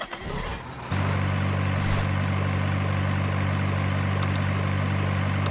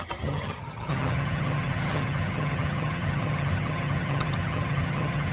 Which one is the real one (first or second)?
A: first